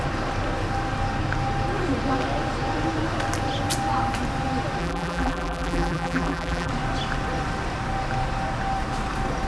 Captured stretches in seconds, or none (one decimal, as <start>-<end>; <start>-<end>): 0.0-4.8; 6.7-9.5